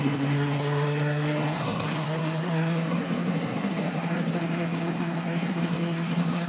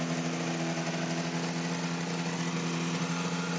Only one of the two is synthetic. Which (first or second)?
first